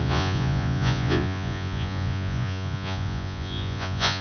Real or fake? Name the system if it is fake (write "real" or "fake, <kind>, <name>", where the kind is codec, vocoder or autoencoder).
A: fake, vocoder, Vocos